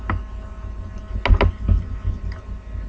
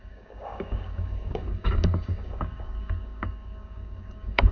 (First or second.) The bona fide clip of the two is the first